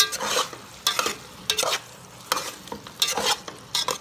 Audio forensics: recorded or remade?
recorded